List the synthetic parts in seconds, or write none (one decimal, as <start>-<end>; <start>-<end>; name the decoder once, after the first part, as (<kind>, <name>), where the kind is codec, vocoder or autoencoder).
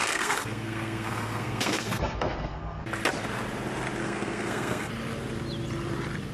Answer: 0.0-2.8 (codec, SNAC); 4.0-4.9